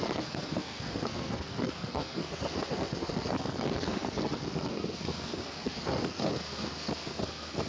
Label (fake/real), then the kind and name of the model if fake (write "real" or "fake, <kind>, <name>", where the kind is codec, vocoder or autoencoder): fake, codec, SNAC